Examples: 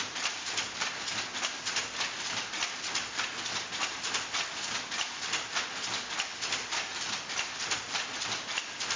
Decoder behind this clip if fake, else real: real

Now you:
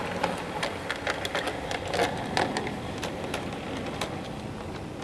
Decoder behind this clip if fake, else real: real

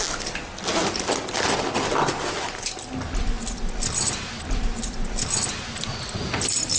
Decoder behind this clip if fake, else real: real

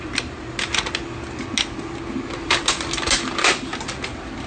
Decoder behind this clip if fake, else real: real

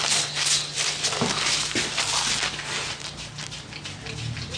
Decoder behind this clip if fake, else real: real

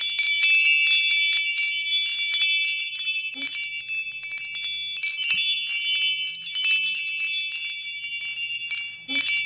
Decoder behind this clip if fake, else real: real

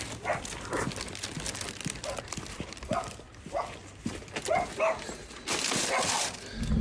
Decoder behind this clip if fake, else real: real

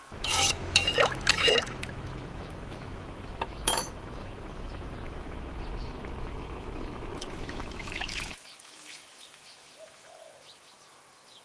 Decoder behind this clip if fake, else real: fake, autoencoder, DAC-VAE